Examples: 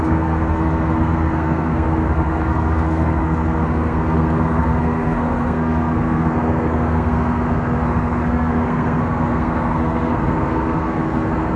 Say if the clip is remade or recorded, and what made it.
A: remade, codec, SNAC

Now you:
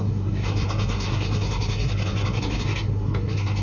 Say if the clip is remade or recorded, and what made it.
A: remade, codec, SNAC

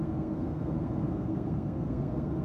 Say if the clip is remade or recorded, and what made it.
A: remade, codec, SNAC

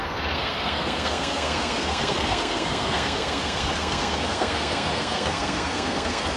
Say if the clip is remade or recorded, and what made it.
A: remade, codec, SNAC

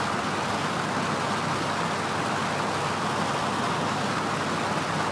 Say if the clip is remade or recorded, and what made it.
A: recorded